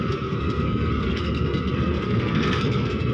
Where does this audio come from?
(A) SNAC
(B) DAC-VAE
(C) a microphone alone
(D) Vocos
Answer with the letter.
A